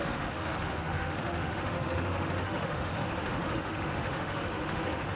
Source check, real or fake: fake